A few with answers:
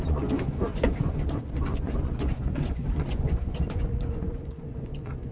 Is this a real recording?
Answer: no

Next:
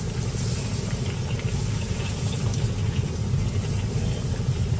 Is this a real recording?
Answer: yes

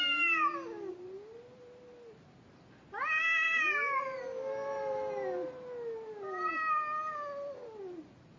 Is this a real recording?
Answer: yes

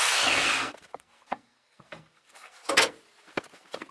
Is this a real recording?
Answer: no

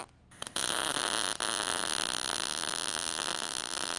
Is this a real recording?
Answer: yes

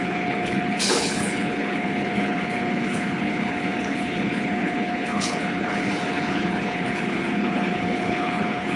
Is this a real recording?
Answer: no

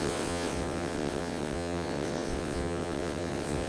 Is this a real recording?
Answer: no